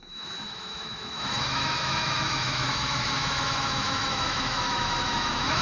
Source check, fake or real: fake